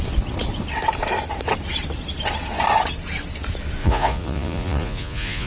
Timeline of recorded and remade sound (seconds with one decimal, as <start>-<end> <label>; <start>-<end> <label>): 0.0-3.8 recorded; 3.8-5.5 remade